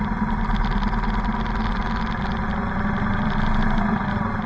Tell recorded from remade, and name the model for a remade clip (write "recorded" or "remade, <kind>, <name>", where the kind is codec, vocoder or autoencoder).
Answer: recorded